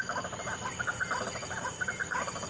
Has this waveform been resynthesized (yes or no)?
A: no